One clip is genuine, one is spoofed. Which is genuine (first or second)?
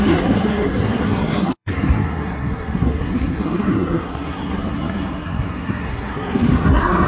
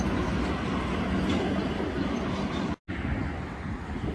second